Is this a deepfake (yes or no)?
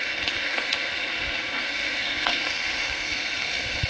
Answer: yes